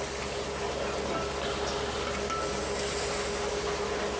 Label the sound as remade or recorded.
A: recorded